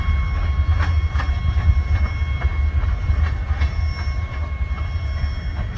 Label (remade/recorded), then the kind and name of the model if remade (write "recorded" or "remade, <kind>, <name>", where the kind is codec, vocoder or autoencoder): recorded